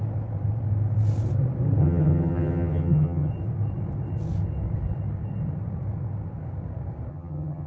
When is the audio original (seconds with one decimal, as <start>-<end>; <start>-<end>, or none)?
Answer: 0.0-1.8; 3.3-7.1